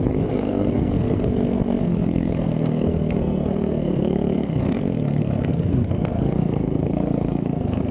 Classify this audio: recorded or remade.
remade